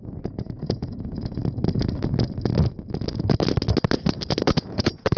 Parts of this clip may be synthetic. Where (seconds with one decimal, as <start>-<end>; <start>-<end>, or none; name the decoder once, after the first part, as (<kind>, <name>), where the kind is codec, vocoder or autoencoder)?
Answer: 0.0-1.4 (vocoder, Vocos); 4.5-5.2